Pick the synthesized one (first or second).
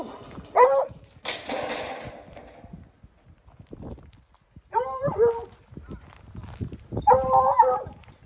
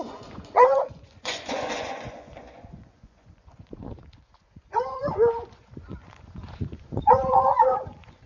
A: second